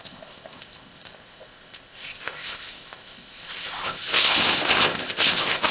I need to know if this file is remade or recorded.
remade